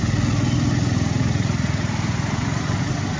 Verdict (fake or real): real